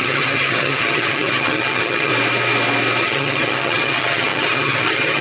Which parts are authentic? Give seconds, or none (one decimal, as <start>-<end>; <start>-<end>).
2.1-3.0